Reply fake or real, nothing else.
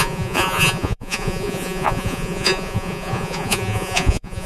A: fake